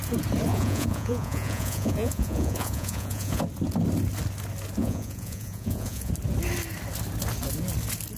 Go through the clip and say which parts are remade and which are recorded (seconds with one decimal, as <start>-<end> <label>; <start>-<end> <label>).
0.0-0.5 recorded; 0.5-3.4 remade; 3.4-4.8 recorded; 4.8-6.1 remade; 6.1-8.2 recorded